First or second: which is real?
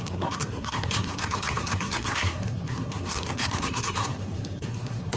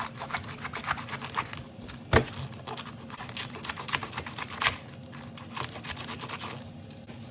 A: second